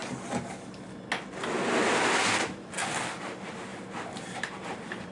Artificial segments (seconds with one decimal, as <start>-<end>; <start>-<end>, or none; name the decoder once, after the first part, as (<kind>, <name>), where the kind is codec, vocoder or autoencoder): 3.1-5.1 (vocoder, BigVGAN v2)